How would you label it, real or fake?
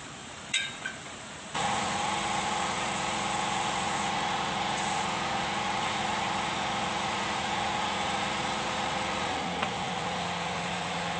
fake